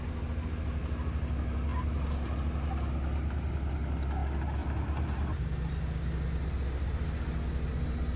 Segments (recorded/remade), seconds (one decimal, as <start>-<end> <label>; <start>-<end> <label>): 0.0-1.7 recorded; 1.7-2.3 remade; 2.3-4.6 recorded; 4.6-5.2 remade; 5.2-8.2 recorded